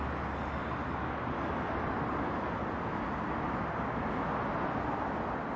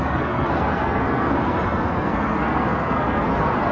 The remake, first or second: second